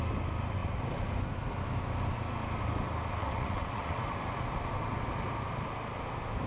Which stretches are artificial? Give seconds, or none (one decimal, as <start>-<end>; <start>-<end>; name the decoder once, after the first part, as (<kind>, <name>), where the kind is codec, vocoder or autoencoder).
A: 3.2-4.0 (vocoder, WaveNeXt)